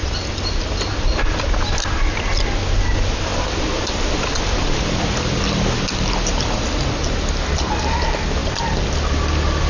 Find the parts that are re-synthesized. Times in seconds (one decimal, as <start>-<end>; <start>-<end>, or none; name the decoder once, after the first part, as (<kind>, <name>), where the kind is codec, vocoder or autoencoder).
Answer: none